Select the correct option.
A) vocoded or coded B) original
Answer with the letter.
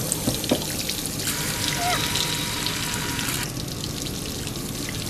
B